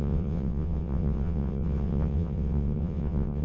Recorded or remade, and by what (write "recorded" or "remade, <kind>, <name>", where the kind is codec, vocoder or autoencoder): remade, vocoder, WaveNeXt